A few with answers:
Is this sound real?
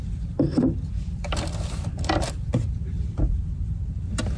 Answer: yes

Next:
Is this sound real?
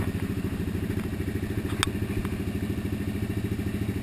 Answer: yes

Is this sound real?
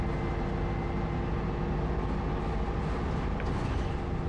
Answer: yes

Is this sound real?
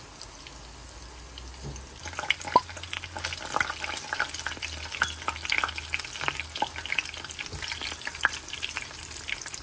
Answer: yes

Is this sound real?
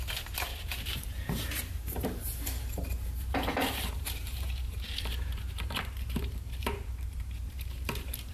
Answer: no